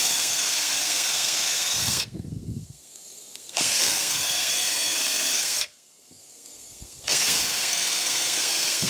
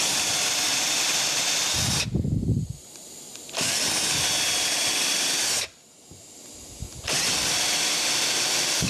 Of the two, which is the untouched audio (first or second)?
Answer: second